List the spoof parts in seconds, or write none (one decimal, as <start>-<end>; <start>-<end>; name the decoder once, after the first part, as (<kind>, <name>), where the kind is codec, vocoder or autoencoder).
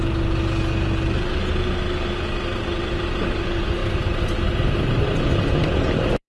5.6-6.3 (vocoder, BigVGAN v2)